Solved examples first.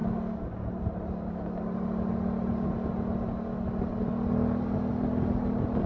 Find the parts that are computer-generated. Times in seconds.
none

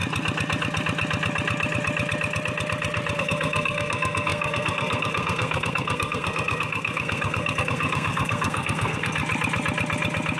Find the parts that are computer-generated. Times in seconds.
3.2-9.2 (codec, SNAC)

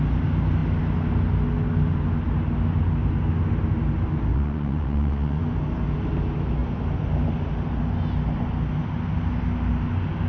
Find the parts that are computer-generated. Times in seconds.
4.3-5.4 (vocoder, Vocos)

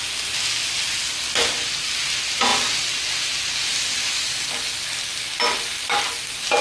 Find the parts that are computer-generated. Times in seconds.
none

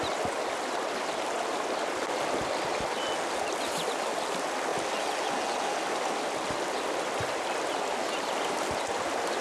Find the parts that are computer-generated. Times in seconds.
none

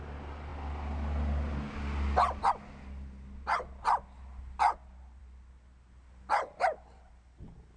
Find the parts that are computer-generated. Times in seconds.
none

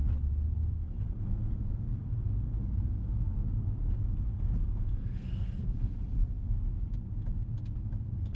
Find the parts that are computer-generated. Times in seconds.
0.7-6.7 (codec, SNAC)